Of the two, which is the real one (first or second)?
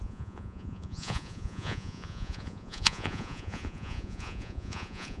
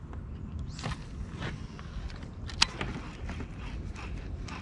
second